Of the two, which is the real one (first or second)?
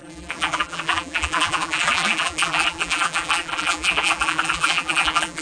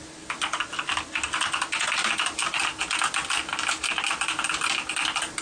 second